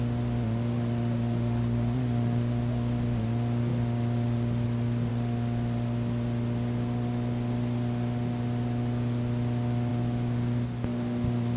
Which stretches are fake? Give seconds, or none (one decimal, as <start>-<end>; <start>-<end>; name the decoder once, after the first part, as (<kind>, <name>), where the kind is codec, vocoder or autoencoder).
none